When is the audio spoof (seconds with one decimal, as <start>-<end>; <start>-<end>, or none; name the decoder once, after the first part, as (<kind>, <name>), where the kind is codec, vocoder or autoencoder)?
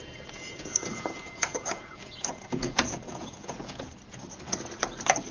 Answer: 0.0-3.9 (vocoder, Vocos)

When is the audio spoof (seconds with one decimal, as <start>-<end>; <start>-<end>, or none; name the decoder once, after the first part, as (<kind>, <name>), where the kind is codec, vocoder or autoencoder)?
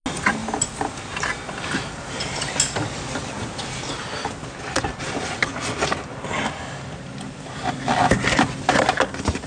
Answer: none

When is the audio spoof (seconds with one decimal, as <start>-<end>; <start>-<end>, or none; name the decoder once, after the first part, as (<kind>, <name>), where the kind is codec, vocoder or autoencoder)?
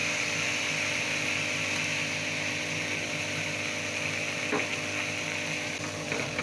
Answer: none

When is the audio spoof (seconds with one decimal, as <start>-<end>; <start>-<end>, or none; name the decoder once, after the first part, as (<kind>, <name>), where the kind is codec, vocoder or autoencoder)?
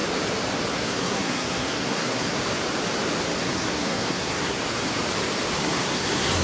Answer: 0.7-2.4 (codec, SNAC); 3.4-4.6; 5.6-6.4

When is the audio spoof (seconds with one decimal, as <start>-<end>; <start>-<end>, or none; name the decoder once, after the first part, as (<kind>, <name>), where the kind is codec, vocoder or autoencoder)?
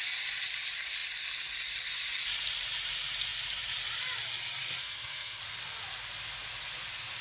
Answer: 4.8-5.4 (codec, SNAC)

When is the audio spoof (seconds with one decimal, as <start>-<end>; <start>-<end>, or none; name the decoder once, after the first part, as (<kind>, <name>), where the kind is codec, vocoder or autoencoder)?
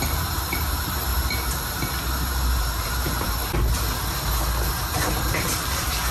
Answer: 0.0-1.1 (vocoder, BigVGAN v2); 2.6-3.4; 4.9-6.1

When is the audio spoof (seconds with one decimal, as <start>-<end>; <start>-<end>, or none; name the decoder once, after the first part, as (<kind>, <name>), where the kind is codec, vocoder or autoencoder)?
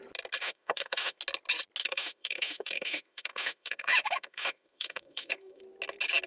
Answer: 0.4-1.2 (autoencoder, DAC-VAE); 1.8-5.6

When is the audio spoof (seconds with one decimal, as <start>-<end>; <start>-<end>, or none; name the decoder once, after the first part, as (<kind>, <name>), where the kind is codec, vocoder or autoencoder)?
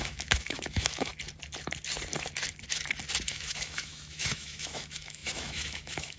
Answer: 0.0-1.1 (autoencoder, DAC-VAE); 3.3-6.2